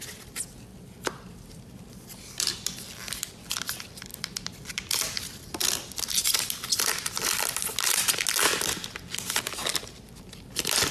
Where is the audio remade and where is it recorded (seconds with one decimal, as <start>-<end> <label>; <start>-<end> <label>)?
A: 0.0-0.7 recorded; 0.7-3.3 remade; 3.3-4.1 recorded; 4.1-8.1 remade; 8.1-10.9 recorded